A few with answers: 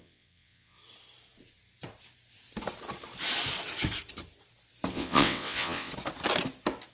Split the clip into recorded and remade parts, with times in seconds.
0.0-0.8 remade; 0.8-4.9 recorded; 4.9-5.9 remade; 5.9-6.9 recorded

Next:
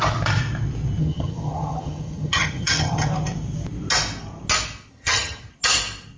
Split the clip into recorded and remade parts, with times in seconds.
0.0-1.0 recorded; 1.0-3.1 remade; 3.1-4.9 recorded; 4.9-5.5 remade; 5.5-6.2 recorded

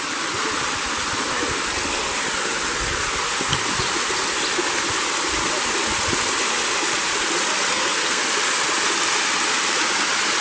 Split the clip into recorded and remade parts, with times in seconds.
0.0-7.7 recorded; 7.7-8.2 remade; 8.2-10.4 recorded

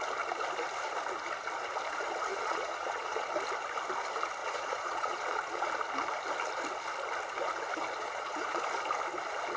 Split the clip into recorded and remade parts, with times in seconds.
0.0-2.3 recorded; 2.3-3.3 remade; 3.3-4.4 recorded; 4.4-5.7 remade; 5.7-8.0 recorded; 8.0-8.6 remade; 8.6-9.6 recorded

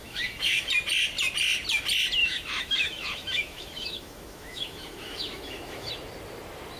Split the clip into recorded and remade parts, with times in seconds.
0.0-0.7 remade; 0.7-2.2 recorded; 2.2-5.9 remade; 5.9-6.8 recorded

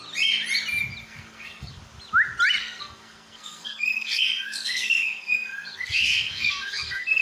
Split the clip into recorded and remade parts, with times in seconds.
0.0-1.0 recorded; 1.0-1.8 remade; 1.8-2.6 recorded; 2.6-7.2 remade

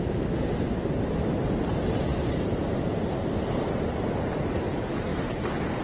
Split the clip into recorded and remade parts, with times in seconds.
0.0-2.1 recorded; 2.1-4.5 remade; 4.5-5.1 recorded; 5.1-5.8 remade

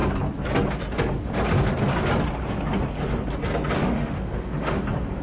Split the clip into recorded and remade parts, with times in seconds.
0.0-3.8 recorded; 3.8-4.8 remade; 4.8-5.2 recorded